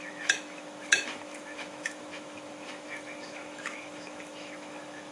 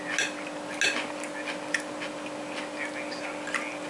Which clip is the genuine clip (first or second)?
second